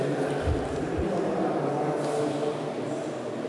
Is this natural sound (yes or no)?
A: yes